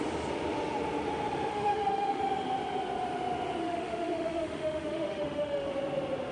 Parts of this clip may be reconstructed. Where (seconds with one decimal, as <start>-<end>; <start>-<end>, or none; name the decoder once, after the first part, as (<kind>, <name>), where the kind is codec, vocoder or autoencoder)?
1.5-2.2 (autoencoder, DAC-VAE); 3.6-5.7